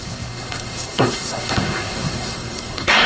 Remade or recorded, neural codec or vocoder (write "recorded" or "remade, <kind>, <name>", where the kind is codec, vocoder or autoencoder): remade, codec, SNAC